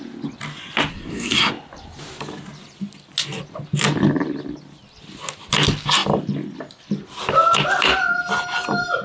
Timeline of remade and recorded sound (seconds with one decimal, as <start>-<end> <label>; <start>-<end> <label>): 0.0-0.9 recorded; 0.9-1.5 remade; 1.5-9.0 recorded